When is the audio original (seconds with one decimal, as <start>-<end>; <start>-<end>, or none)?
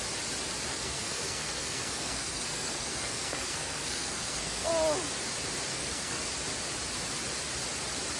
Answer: 0.0-0.7; 4.7-5.7; 6.2-8.2